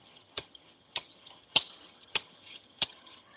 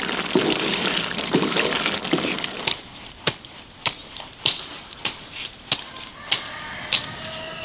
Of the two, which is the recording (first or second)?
second